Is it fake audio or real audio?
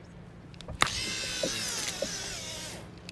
real